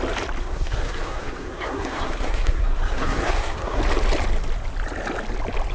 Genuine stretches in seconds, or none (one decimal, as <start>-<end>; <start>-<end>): 0.0-0.4; 3.8-5.7